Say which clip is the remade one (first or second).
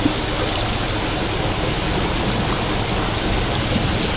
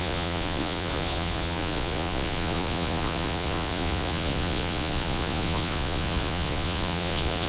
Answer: second